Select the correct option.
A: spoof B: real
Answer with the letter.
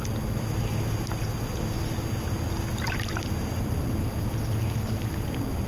B